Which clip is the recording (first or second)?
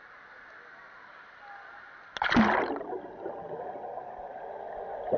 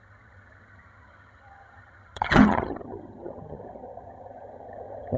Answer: first